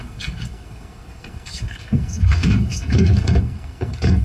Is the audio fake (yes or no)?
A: yes